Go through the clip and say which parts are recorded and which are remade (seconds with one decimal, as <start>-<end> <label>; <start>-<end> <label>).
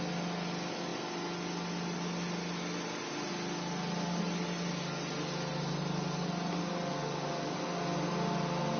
0.0-8.8 recorded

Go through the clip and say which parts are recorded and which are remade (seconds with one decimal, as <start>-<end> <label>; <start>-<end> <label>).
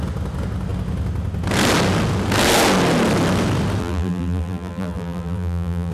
0.0-3.8 recorded; 3.8-5.9 remade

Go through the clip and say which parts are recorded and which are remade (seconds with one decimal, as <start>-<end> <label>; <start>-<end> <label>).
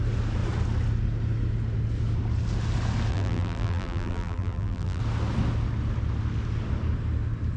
0.0-3.1 recorded; 3.1-5.0 remade; 5.0-7.6 recorded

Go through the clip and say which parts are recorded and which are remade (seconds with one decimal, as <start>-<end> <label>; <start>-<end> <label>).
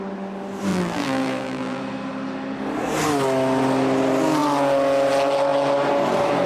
0.0-0.7 recorded; 0.7-1.8 remade; 1.8-6.5 recorded